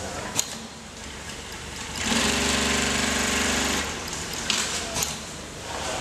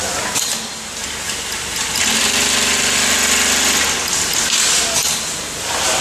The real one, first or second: second